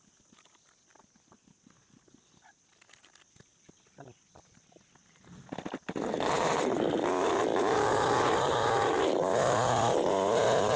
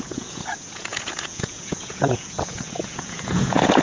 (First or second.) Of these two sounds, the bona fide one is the first